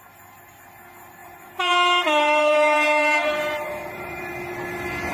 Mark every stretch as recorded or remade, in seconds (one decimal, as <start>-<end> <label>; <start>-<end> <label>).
0.0-1.2 recorded; 1.2-4.3 remade; 4.3-5.1 recorded